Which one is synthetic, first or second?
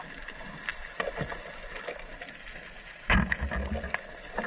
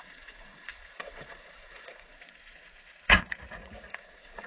second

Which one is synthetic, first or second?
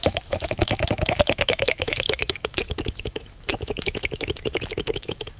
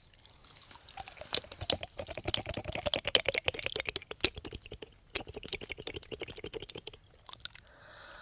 first